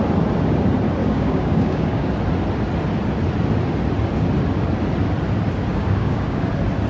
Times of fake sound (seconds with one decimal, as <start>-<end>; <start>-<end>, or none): 1.0-2.1; 5.7-6.5